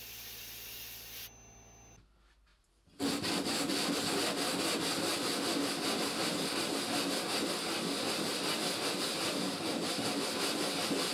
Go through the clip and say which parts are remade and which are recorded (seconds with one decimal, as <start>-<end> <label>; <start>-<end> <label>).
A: 0.0-11.1 recorded